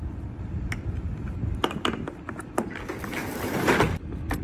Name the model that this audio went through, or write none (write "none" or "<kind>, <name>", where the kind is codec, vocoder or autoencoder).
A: none